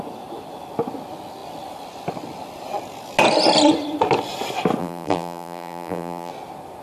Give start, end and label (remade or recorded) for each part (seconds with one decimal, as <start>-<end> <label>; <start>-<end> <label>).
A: 0.0-4.8 recorded; 4.8-6.3 remade; 6.3-6.8 recorded